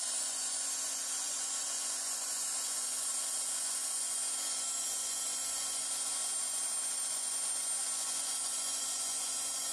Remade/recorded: remade